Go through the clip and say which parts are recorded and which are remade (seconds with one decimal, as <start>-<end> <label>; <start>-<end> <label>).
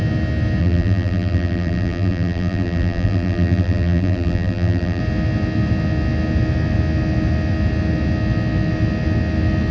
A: 0.0-0.6 recorded; 0.6-5.0 remade; 5.0-9.7 recorded